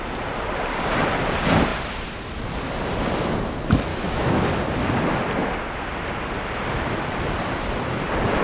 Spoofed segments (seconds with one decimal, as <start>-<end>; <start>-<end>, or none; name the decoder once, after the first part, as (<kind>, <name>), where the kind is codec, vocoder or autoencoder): 3.9-4.4 (autoencoder, DAC-VAE)